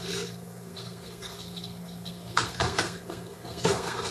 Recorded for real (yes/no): no